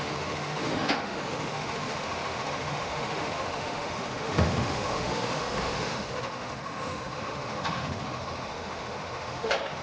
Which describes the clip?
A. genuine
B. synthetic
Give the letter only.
B